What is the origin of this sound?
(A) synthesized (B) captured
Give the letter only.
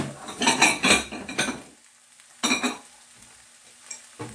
B